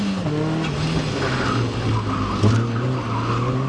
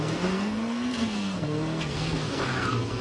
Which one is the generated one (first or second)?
second